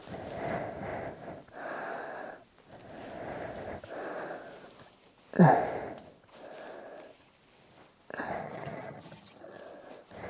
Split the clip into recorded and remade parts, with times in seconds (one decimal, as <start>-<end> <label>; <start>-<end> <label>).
0.0-8.4 recorded; 8.4-9.6 remade; 9.6-10.3 recorded